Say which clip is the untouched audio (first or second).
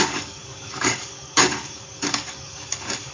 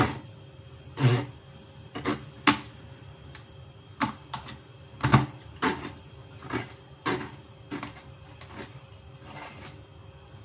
second